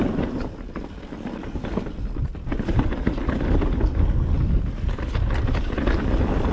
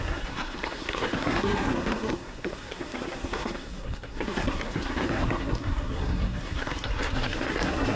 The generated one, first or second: second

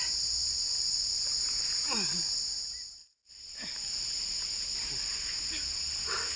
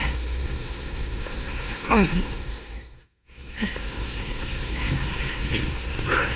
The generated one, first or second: second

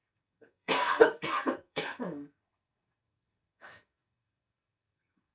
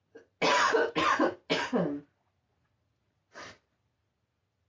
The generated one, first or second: first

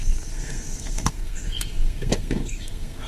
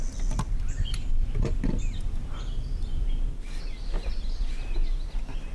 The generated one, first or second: first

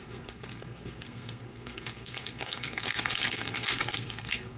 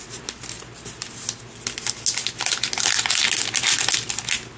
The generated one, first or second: first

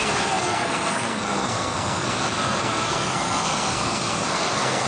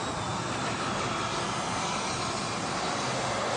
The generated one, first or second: first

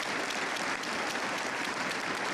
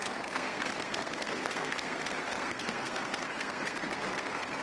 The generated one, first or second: second